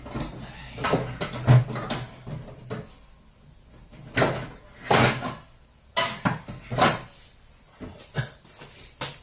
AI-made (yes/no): no